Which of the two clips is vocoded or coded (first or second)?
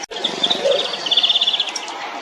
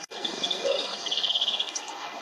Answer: second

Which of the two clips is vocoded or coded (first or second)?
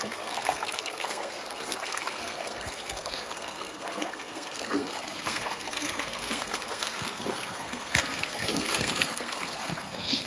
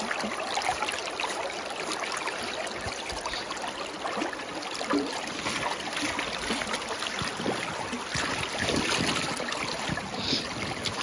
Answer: first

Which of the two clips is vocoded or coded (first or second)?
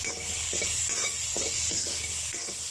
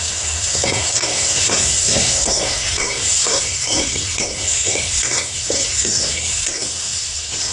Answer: second